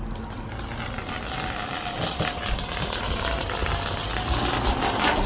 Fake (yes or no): no